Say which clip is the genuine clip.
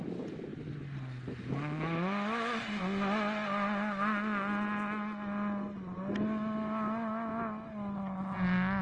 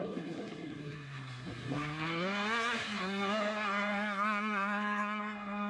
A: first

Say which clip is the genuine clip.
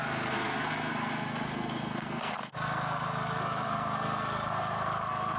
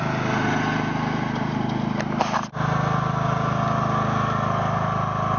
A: second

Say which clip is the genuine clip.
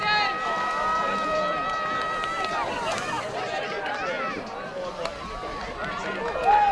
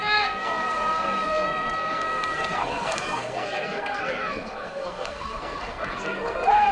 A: first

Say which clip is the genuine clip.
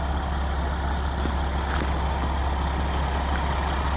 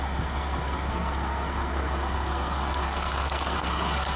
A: first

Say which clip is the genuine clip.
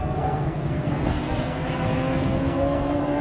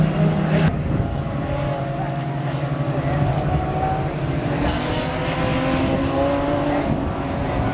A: second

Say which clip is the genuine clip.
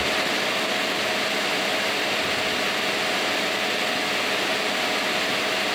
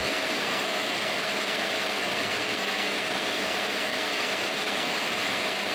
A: first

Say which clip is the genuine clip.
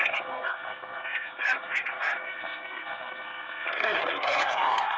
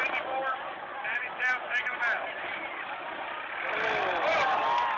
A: second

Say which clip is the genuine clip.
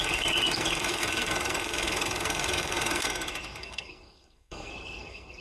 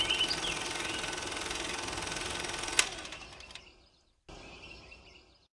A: second